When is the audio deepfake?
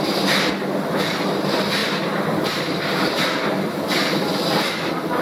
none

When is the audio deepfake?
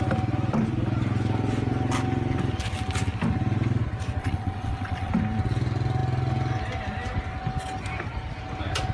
4.2-5.1 (vocoder, WaveNeXt)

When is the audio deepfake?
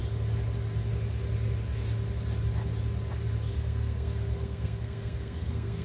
3.5-5.8 (codec, SNAC)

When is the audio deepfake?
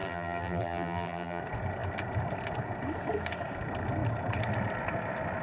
0.0-1.4 (vocoder, BigVGAN v2)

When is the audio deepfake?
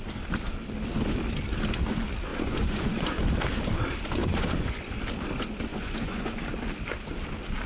2.3-3.2 (vocoder, Vocos); 4.2-5.0; 5.7-6.4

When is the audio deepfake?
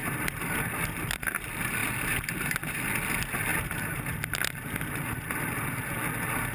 none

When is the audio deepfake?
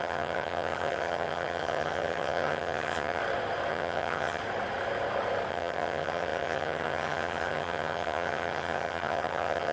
0.0-3.2 (vocoder, HiFi-GAN); 3.7-4.4; 5.5-9.7